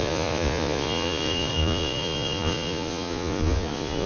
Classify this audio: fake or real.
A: fake